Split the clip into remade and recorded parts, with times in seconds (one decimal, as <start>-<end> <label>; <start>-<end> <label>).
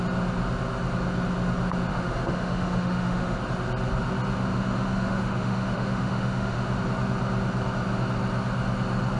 0.0-1.9 recorded; 1.9-3.4 remade; 3.4-4.5 recorded; 4.5-6.8 remade; 6.8-9.2 recorded